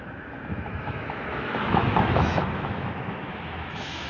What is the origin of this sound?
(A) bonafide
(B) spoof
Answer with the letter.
B